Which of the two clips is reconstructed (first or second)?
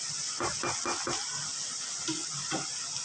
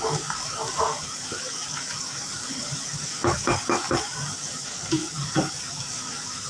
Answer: second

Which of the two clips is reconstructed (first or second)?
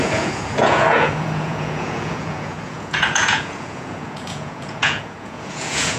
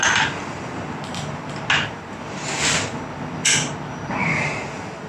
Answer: first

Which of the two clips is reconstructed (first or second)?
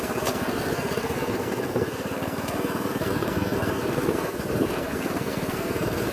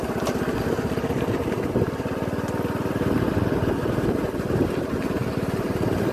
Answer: first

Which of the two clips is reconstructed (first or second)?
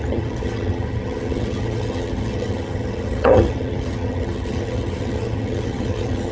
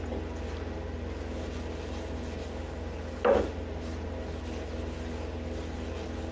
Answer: first